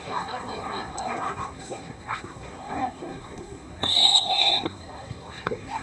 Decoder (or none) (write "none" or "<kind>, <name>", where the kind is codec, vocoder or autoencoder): codec, SNAC